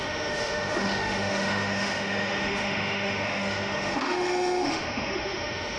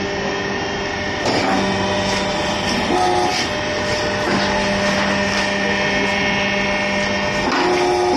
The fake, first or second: first